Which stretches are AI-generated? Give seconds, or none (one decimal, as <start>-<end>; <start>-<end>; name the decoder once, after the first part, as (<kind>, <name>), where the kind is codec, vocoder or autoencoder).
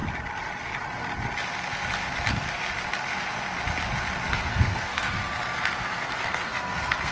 4.3-5.2 (codec, SNAC); 5.8-7.1